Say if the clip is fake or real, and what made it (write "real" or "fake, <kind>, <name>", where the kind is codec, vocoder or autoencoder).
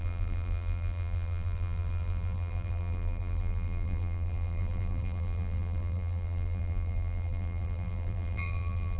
fake, vocoder, BigVGAN v2